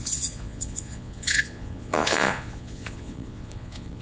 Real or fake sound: fake